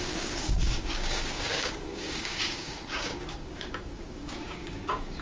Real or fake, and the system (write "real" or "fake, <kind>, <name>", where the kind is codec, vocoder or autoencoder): fake, codec, DAC